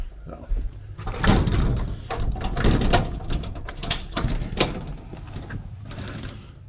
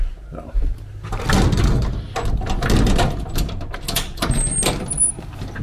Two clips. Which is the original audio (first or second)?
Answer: second